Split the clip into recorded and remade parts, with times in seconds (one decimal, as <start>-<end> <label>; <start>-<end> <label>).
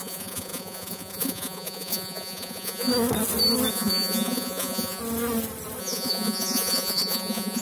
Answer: 0.0-2.9 remade; 2.9-3.7 recorded; 3.7-5.0 remade; 5.0-5.8 recorded; 5.8-7.6 remade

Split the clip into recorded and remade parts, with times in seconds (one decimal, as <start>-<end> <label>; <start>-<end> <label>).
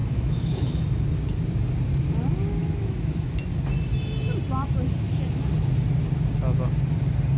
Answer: 0.0-0.8 remade; 0.8-2.6 recorded; 2.6-3.3 remade; 3.3-7.4 recorded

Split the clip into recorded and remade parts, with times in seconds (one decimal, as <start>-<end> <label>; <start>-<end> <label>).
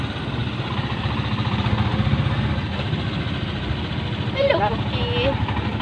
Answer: 0.0-5.8 recorded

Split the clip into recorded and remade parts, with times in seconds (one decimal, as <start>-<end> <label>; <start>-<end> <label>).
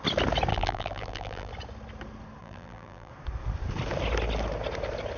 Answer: 0.0-0.5 recorded; 0.5-1.5 remade; 1.5-2.4 recorded; 2.4-3.1 remade; 3.1-5.2 recorded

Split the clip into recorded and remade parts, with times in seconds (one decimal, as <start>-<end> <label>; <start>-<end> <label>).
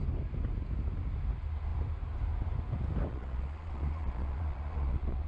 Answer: 0.0-3.1 recorded; 3.1-5.3 remade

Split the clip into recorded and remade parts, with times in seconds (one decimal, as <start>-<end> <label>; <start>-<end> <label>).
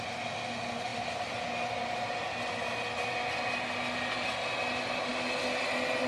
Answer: 0.0-6.1 recorded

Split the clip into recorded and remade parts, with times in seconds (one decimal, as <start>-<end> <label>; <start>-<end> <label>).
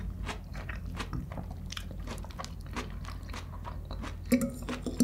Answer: 0.0-0.5 recorded; 0.5-2.4 remade; 2.4-5.0 recorded